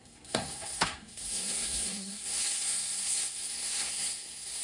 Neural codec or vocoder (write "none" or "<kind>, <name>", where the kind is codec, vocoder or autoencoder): codec, SNAC